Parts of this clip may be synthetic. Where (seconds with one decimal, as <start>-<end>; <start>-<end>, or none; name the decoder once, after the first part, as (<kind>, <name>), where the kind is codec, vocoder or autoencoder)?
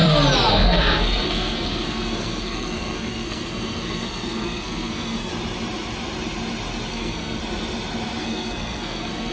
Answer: 0.5-5.3 (codec, SNAC); 6.9-7.4; 8.2-9.3